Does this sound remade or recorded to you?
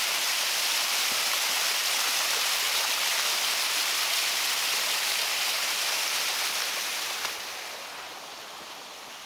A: recorded